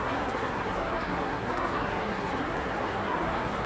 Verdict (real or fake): fake